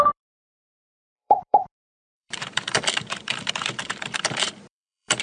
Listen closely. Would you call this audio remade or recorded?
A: remade